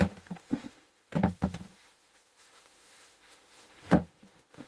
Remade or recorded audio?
remade